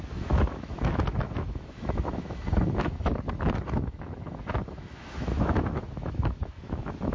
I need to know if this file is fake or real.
fake